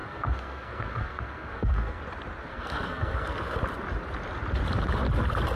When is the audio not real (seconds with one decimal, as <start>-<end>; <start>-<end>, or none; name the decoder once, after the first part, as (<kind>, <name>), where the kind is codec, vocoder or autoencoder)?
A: 0.0-2.0 (codec, SNAC); 2.5-3.6